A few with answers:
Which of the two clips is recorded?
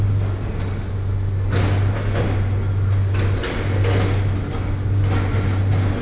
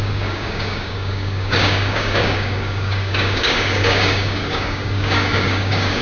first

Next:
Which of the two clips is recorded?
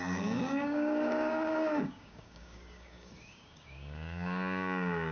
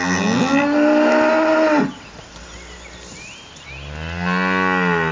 second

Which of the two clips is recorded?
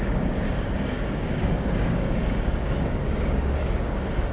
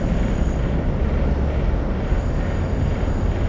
second